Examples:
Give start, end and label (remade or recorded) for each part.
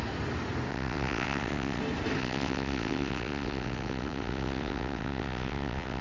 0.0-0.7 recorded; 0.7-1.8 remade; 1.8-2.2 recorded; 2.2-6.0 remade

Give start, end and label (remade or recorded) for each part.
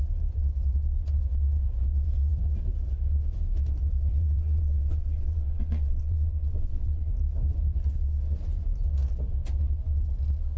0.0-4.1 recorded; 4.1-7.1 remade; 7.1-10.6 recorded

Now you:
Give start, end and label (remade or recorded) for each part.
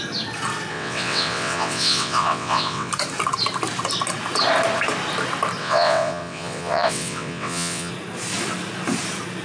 0.0-0.7 recorded; 0.7-2.9 remade; 2.9-5.6 recorded; 5.6-7.9 remade; 7.9-9.4 recorded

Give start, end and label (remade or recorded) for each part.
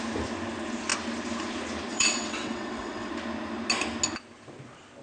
0.0-1.9 recorded; 1.9-3.1 remade; 3.1-5.0 recorded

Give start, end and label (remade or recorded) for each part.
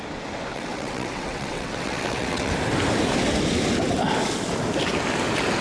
0.0-0.5 recorded; 0.5-2.5 remade; 2.5-5.6 recorded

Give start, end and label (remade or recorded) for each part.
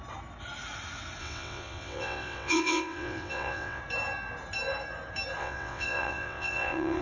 0.0-1.2 recorded; 1.2-3.8 remade; 3.8-5.4 recorded; 5.4-7.0 remade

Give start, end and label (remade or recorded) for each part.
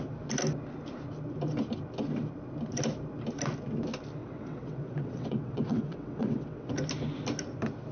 0.0-4.2 recorded; 4.2-6.7 remade; 6.7-7.9 recorded